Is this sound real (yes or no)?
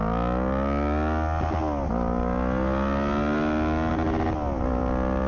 yes